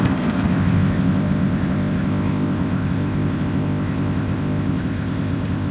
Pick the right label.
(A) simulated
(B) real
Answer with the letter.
A